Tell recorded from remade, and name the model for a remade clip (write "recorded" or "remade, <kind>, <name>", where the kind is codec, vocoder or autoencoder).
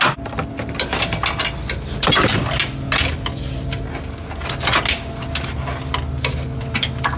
recorded